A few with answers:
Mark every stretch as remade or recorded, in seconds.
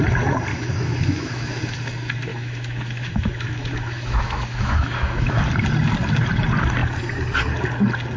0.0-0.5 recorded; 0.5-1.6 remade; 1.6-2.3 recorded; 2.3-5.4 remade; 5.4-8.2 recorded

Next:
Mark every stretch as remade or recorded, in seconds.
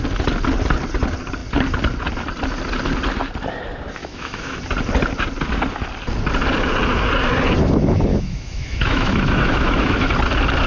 0.0-4.0 recorded; 4.0-4.6 remade; 4.6-8.1 recorded; 8.1-10.1 remade; 10.1-10.7 recorded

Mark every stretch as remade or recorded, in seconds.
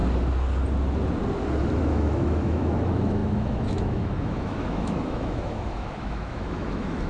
0.0-1.8 recorded; 1.8-7.1 remade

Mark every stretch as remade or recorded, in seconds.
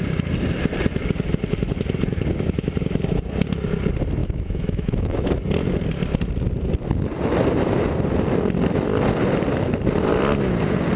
0.0-4.2 recorded; 4.2-5.3 remade; 5.3-11.0 recorded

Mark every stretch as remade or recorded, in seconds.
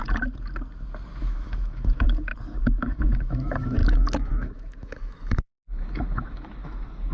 0.0-1.2 recorded; 1.2-2.3 remade; 2.3-2.8 recorded; 2.8-7.1 remade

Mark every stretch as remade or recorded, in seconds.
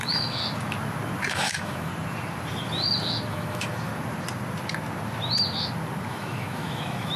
0.0-0.4 remade; 0.4-1.3 recorded; 1.3-1.9 remade; 1.9-3.3 recorded; 3.3-3.9 remade; 3.9-6.1 recorded; 6.1-7.2 remade